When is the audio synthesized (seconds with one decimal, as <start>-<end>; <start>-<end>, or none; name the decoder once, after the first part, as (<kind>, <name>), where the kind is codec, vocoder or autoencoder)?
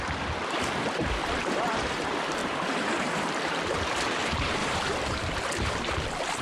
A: 1.4-2.0 (vocoder, BigVGAN v2); 2.4-3.6; 4.6-6.0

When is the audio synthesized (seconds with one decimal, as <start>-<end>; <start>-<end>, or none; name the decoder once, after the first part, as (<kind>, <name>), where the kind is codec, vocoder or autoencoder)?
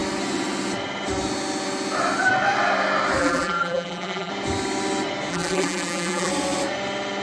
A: 3.2-4.3 (vocoder, BigVGAN v2); 5.3-6.3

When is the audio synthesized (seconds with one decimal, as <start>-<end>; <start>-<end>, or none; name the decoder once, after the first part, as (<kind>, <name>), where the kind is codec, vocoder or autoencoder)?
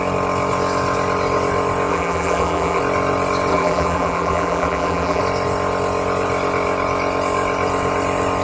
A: 1.9-2.8 (vocoder, BigVGAN v2); 3.5-5.2